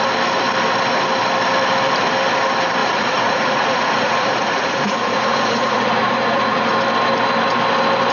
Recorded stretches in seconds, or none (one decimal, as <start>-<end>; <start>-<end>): 0.0-2.8; 6.7-8.1